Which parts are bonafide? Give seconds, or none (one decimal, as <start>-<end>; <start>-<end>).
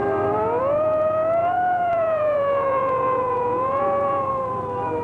0.0-1.4; 4.3-5.0